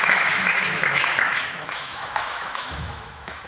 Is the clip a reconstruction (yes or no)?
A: yes